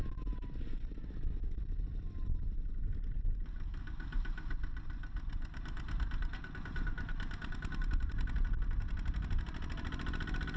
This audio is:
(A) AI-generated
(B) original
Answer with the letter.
B